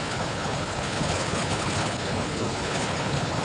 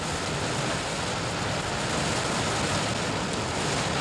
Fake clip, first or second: first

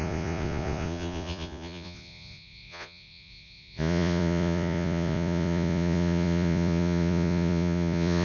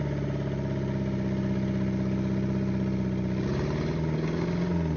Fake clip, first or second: first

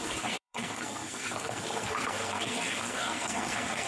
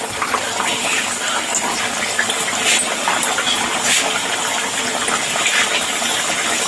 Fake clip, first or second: first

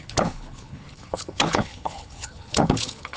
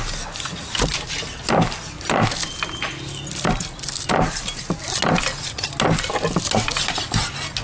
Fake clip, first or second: first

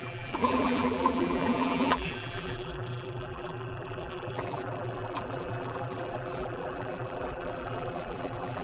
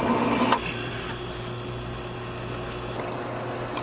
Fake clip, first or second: first